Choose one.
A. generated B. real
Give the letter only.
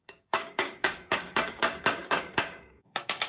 A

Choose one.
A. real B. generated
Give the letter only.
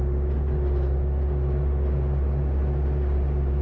A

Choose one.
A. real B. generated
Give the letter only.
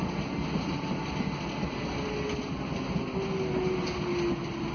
A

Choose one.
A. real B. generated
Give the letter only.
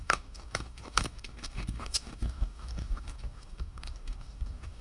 B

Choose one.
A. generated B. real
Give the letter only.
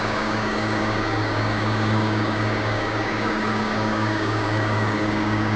A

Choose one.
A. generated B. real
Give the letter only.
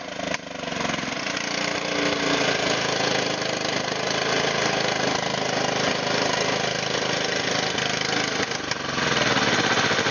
B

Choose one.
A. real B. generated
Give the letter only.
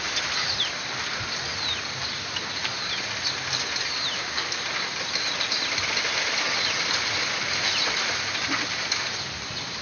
A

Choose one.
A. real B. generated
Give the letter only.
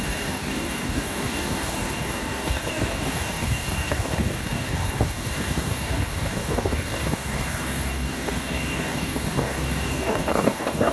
B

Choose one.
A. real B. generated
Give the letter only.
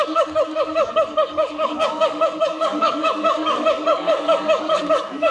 B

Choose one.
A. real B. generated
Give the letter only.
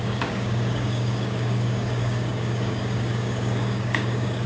B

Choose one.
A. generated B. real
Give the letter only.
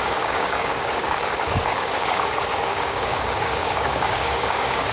A